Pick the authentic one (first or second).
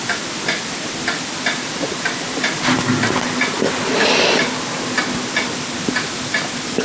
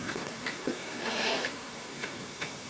first